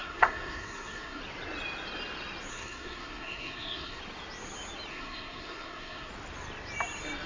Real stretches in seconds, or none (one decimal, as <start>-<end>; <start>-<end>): 1.2-2.5; 4.0-4.9; 6.1-7.3